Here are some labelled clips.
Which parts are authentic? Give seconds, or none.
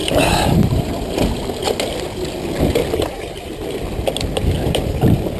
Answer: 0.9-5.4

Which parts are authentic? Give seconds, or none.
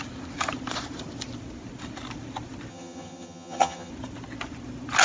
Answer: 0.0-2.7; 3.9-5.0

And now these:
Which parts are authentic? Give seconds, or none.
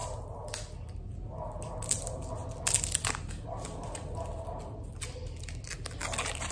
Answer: 0.0-6.5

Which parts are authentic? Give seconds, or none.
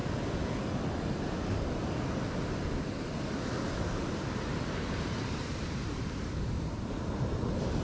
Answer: 0.0-4.0